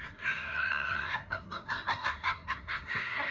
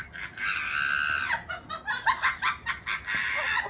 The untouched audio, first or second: second